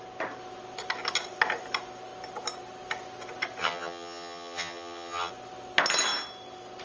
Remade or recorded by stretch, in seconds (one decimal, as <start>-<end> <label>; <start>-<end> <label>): 0.0-3.6 recorded; 3.6-5.3 remade; 5.3-6.8 recorded